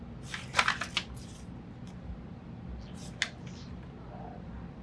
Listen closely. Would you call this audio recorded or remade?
recorded